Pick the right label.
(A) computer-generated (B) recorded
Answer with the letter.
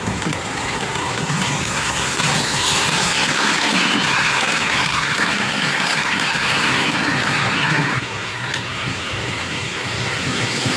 A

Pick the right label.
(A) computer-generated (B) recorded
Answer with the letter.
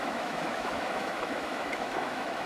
A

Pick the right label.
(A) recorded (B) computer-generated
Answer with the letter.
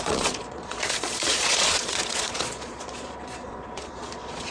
B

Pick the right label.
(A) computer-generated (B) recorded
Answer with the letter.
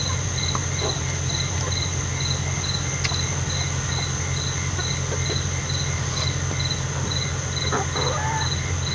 B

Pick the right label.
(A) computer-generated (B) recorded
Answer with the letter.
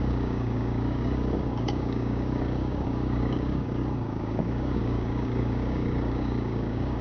A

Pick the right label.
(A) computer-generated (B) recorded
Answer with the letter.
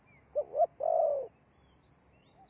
B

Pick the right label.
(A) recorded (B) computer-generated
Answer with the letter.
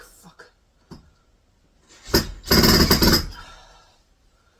A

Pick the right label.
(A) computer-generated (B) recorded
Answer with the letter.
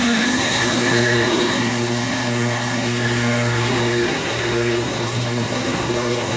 A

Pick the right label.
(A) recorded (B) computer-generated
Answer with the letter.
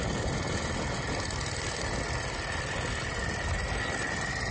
A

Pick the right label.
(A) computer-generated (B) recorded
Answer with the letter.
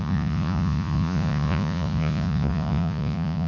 A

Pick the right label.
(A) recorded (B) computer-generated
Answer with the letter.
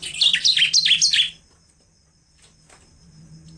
A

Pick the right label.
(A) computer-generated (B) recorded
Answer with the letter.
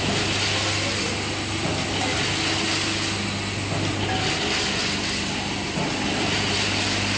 B